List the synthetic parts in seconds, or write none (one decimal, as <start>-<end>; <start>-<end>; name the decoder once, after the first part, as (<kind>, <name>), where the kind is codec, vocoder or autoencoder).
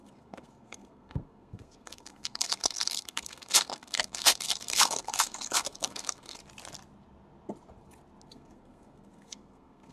0.0-6.4 (codec, SNAC); 8.3-9.9